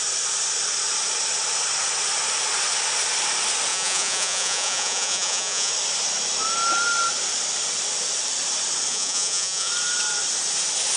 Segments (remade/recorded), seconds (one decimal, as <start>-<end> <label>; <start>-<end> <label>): 0.0-3.7 recorded; 3.7-5.7 remade; 5.7-8.9 recorded; 8.9-9.7 remade; 9.7-11.0 recorded